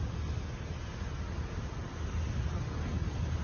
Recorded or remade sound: recorded